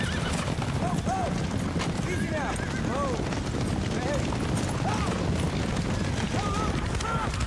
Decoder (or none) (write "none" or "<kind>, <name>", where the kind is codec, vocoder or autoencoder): none